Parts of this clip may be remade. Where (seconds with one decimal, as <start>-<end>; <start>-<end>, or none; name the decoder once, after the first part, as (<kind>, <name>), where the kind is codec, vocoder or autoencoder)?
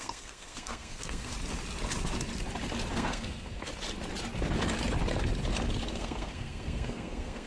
0.0-1.3 (codec, SNAC); 2.9-3.7; 5.9-7.5